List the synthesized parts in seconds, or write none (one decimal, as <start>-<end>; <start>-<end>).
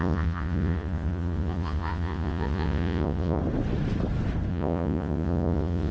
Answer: 0.0-3.4; 4.5-5.9